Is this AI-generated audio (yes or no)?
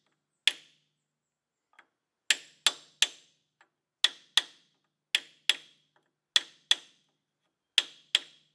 no